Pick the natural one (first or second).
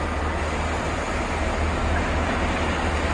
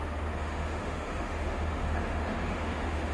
first